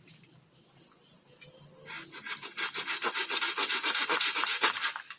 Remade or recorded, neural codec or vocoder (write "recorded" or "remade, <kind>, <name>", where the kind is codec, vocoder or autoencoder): recorded